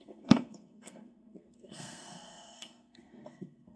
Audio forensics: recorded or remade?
remade